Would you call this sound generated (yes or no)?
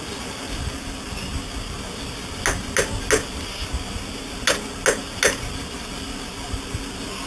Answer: no